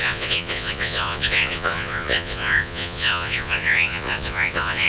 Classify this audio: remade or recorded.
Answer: remade